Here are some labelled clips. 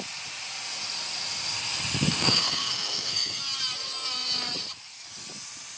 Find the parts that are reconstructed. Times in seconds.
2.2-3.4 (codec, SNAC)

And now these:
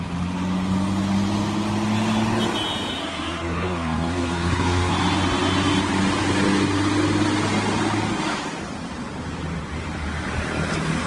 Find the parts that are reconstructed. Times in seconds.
3.0-4.9 (codec, SNAC)

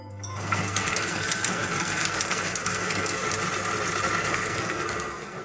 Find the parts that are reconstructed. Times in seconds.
0.0-3.2 (codec, SNAC); 4.2-5.4

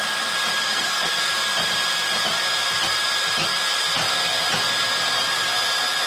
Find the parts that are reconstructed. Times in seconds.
0.6-1.3 (codec, SNAC)

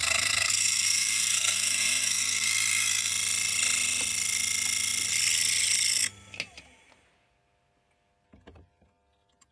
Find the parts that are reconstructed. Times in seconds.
0.0-3.1 (codec, SNAC)

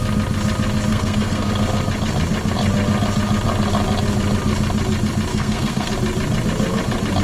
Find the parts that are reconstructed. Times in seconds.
0.9-1.5 (codec, SNAC); 5.3-5.9

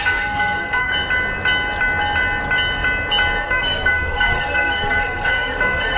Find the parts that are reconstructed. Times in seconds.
0.0-0.9 (codec, SNAC); 3.4-6.0

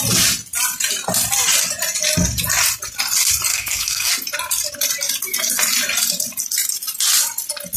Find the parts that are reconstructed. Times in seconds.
3.5-4.1 (codec, SNAC)